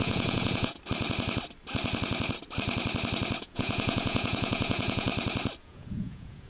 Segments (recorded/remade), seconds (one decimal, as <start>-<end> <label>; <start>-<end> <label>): 0.0-0.8 remade; 0.8-3.4 recorded; 3.4-5.1 remade; 5.1-5.6 recorded; 5.6-6.5 remade